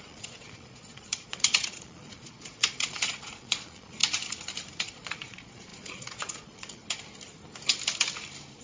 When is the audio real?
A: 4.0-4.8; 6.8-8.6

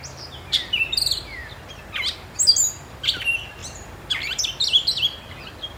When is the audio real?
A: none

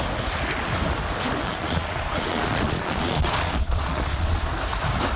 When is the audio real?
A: 0.0-1.4; 4.5-5.2

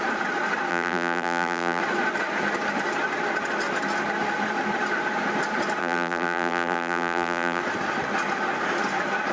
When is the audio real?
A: 0.0-0.7; 1.8-5.8; 7.6-9.3

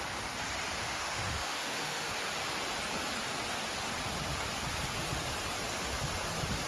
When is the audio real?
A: 0.0-0.8; 2.1-6.7